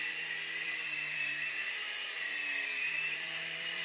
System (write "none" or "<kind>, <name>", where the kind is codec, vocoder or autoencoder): vocoder, BigVGAN v2